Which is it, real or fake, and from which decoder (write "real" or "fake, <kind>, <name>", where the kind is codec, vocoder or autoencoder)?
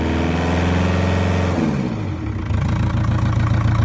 real